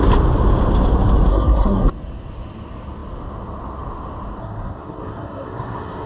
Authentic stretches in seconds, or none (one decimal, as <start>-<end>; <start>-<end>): 0.0-1.3; 1.9-4.4